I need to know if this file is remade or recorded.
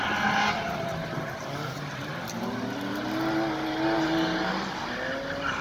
recorded